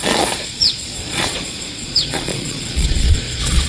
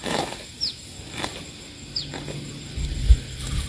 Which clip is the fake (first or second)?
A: first